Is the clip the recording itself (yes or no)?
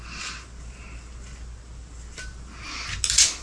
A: yes